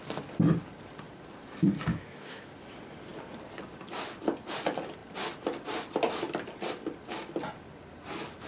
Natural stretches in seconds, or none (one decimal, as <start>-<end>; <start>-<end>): 0.0-1.9; 2.5-8.5